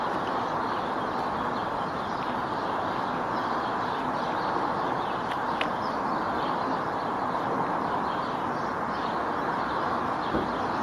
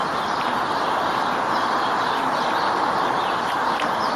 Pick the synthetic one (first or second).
second